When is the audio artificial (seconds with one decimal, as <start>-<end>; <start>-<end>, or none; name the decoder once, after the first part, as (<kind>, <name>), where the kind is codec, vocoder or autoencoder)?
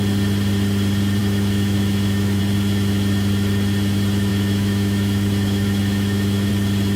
1.2-2.4 (autoencoder, DAC-VAE); 4.3-6.5